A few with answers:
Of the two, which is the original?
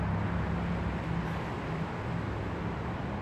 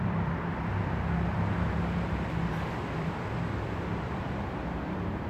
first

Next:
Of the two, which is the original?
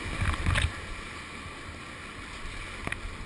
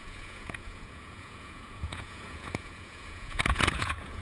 first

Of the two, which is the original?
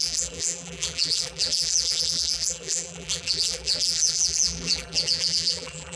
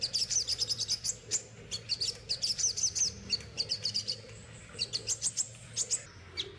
second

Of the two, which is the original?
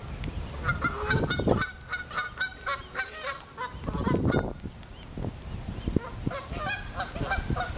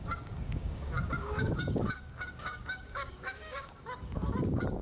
first